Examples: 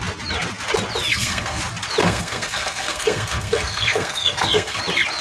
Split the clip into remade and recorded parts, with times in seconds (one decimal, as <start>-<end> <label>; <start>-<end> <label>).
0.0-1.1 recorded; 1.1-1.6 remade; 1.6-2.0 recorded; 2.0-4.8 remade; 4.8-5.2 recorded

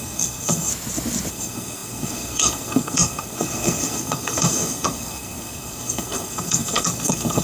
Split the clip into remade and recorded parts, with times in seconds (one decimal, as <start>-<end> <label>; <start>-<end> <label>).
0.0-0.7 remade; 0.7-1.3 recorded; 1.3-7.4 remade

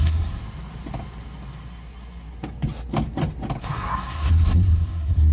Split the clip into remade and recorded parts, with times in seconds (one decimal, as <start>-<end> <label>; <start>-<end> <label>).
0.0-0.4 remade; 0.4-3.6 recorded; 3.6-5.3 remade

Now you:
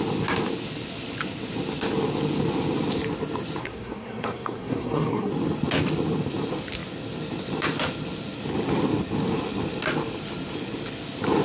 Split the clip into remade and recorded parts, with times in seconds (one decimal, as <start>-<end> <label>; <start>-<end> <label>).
0.0-3.6 recorded; 3.6-5.3 remade; 5.3-11.4 recorded

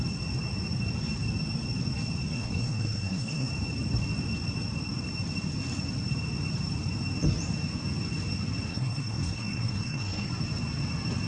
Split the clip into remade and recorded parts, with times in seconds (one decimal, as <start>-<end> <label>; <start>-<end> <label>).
0.0-2.3 recorded; 2.3-3.5 remade; 3.5-8.7 recorded; 8.7-10.3 remade; 10.3-11.3 recorded